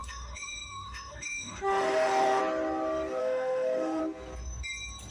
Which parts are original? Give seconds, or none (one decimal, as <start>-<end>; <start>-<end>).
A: 2.4-3.2; 4.0-5.1